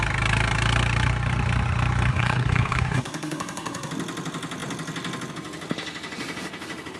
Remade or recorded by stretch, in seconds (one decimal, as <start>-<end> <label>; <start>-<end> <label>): 0.0-2.1 recorded; 2.1-3.9 remade; 3.9-7.0 recorded